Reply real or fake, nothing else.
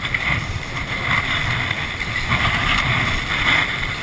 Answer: real